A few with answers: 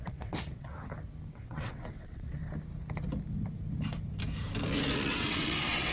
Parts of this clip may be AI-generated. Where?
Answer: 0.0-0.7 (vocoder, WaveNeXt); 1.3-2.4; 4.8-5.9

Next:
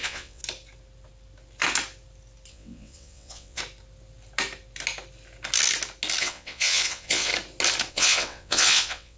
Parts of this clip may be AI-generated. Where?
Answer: 0.0-0.4 (vocoder, WaveNeXt); 2.5-3.6; 6.2-7.3; 7.9-9.2